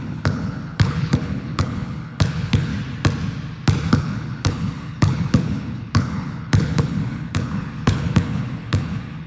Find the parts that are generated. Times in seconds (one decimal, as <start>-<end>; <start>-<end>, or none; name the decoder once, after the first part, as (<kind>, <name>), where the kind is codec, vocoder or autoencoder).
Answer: 0.0-2.7 (codec, HILCodec); 3.9-9.3